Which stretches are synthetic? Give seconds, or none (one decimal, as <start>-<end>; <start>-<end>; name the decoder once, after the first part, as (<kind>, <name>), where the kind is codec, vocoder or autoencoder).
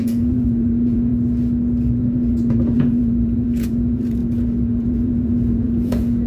0.0-1.1 (vocoder, Vocos); 2.0-6.3